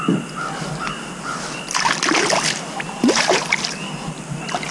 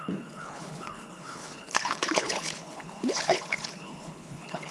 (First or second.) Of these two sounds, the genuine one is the first